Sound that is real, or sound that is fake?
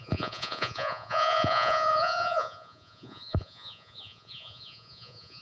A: fake